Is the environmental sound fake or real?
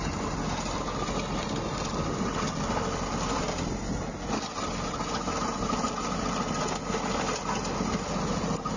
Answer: real